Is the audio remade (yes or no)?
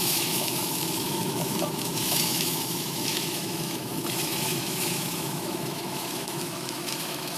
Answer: yes